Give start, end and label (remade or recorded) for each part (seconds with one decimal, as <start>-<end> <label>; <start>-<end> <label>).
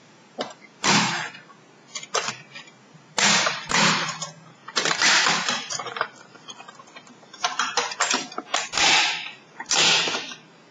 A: 0.0-1.4 remade; 1.4-3.1 recorded; 3.1-10.7 remade